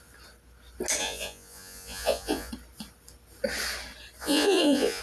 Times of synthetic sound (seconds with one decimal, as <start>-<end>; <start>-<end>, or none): 1.0-2.5; 4.2-5.0